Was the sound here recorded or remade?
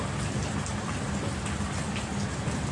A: recorded